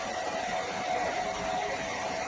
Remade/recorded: recorded